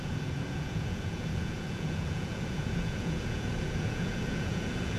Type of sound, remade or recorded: remade